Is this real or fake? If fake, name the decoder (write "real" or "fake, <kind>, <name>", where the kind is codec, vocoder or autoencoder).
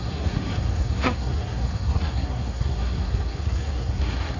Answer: fake, codec, SNAC